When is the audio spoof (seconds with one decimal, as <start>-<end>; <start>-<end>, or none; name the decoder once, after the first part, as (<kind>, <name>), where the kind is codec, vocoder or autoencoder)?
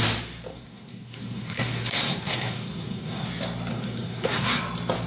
0.5-3.3 (codec, SNAC); 3.7-4.6